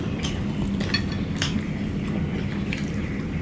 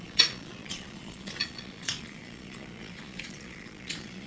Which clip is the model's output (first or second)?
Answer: second